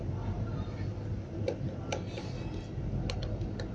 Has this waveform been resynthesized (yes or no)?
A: no